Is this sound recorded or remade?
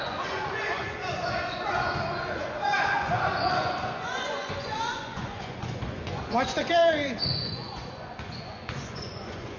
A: remade